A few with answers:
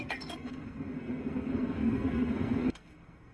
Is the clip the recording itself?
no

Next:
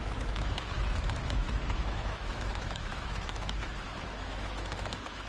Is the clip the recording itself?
no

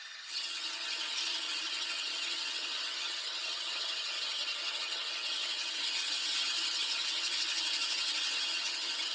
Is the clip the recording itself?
no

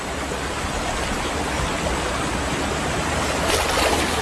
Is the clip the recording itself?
yes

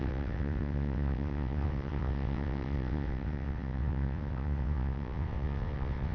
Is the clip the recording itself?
no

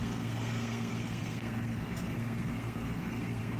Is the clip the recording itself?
no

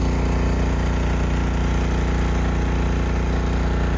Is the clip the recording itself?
yes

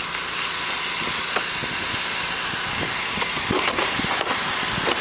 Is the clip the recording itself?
yes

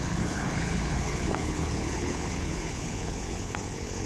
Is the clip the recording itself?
no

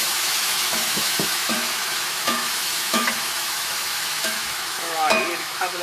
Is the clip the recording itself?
no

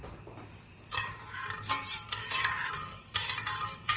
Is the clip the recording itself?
no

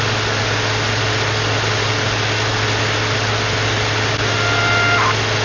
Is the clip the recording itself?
yes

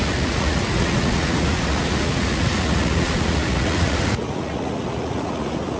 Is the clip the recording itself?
no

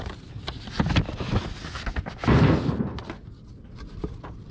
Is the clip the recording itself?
yes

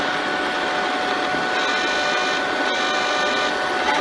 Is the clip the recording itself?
yes